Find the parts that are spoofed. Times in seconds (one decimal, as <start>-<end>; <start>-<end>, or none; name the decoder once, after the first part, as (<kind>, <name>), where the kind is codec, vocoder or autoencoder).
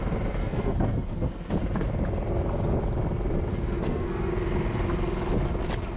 0.4-1.5 (codec, SNAC); 3.5-4.3